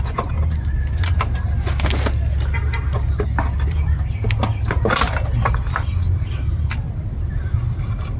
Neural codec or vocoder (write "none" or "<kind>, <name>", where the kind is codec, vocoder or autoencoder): none